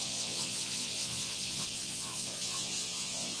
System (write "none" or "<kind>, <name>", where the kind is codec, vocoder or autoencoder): vocoder, Vocos